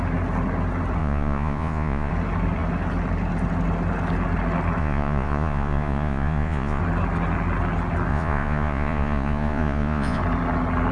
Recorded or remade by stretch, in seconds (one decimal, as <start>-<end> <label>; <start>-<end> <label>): 0.0-1.0 recorded; 1.0-2.1 remade; 2.1-4.8 recorded; 4.8-6.8 remade; 6.8-8.1 recorded; 8.1-10.2 remade; 10.2-10.9 recorded